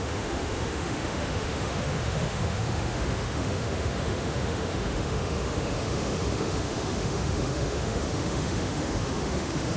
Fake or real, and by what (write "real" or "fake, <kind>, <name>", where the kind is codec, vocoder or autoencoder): fake, autoencoder, DAC-VAE